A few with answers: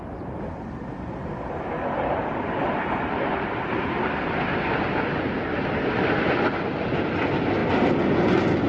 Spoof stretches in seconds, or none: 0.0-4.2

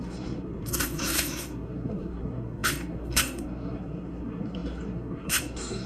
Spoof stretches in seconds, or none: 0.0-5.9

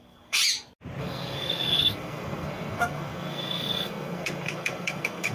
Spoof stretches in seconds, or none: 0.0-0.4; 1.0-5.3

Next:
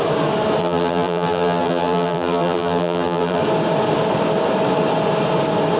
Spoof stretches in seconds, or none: 0.6-3.4

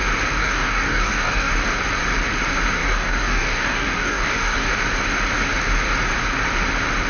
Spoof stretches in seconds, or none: 0.4-1.5; 2.8-4.7

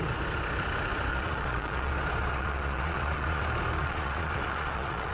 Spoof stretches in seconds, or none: 1.1-1.9; 2.3-3.4; 3.8-5.1

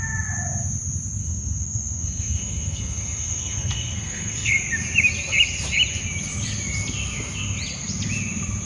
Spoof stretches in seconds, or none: 1.2-4.5

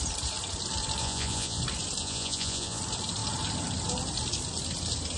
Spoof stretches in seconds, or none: 1.0-1.6; 2.0-2.8